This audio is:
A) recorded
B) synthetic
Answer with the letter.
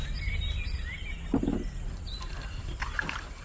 A